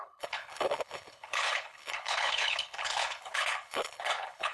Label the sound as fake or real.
fake